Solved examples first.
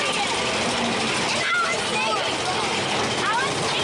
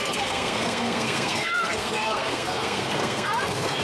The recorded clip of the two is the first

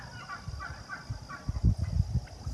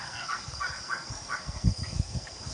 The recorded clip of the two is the first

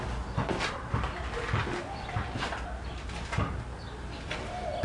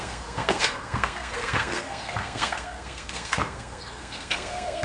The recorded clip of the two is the first